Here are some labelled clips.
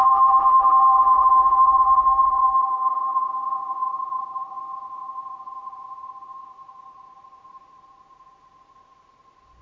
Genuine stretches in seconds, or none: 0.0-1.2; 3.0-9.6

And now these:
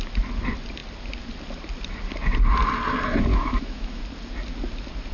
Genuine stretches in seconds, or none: 0.0-3.3; 4.0-5.1

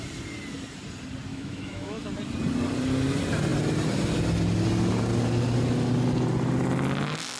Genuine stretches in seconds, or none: 0.0-1.3; 2.1-7.4